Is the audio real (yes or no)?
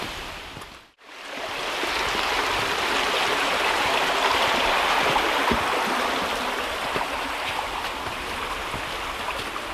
yes